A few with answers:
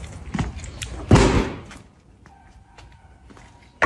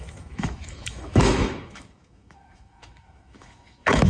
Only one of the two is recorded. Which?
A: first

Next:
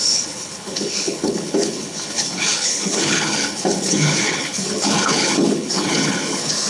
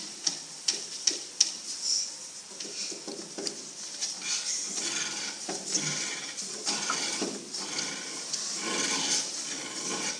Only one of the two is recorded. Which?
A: second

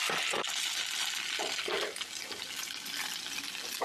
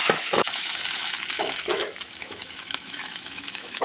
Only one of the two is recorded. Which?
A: first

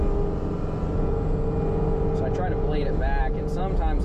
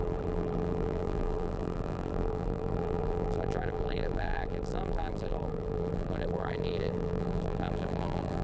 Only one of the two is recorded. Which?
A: first